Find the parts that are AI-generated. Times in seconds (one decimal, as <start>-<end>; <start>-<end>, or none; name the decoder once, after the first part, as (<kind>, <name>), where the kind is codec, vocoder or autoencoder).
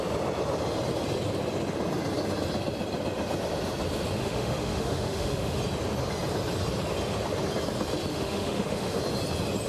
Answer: 4.2-5.6 (autoencoder, DAC-VAE); 8.1-9.0